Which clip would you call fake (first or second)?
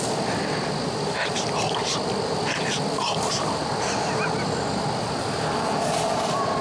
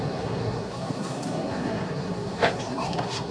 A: second